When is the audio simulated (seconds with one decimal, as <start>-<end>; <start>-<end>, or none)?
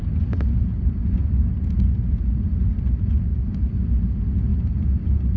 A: none